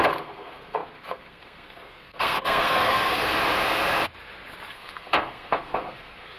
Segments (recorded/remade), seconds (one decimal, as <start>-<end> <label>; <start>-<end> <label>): 0.0-3.3 remade; 3.3-4.7 recorded; 4.7-6.4 remade